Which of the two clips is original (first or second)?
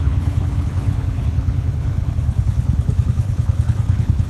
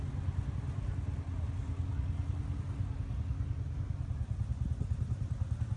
second